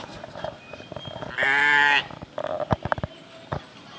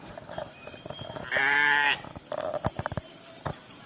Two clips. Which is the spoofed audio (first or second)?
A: second